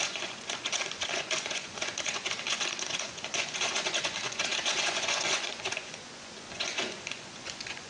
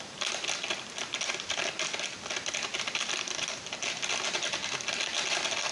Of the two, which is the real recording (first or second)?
second